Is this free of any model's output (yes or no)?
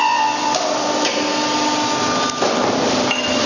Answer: yes